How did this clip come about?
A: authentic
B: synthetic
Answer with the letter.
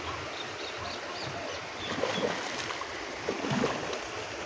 A